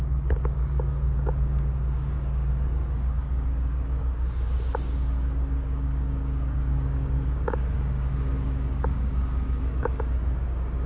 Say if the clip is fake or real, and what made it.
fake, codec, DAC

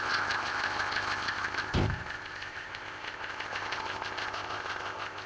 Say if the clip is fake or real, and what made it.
fake, codec, ZipCodec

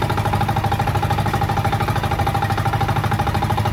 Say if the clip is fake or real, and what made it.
real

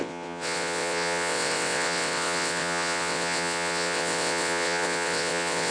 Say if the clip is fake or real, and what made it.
fake, vocoder, WaveNeXt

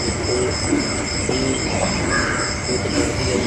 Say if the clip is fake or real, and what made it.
real